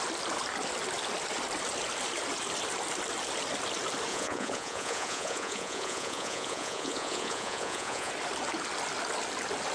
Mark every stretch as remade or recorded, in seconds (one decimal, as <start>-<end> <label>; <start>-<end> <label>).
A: 0.0-4.1 recorded; 4.1-8.1 remade; 8.1-9.7 recorded